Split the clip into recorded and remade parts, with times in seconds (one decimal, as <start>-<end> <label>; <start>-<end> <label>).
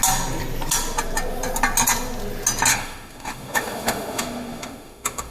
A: 0.0-2.7 recorded; 2.7-5.3 remade